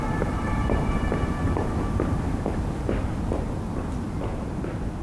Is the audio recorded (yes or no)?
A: no